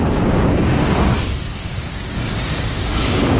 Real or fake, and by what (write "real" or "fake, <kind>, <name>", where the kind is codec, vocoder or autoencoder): fake, codec, DAC